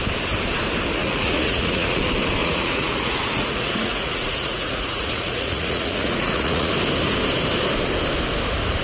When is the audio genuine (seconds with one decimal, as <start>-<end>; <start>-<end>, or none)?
0.0-1.0; 2.0-2.4; 6.7-8.8